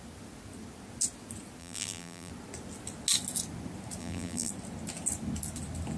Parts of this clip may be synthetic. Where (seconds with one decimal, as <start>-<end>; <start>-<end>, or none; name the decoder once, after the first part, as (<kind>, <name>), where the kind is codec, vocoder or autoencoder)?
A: 1.6-2.3 (vocoder, BigVGAN v2); 4.0-4.5